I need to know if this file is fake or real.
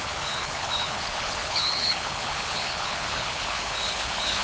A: fake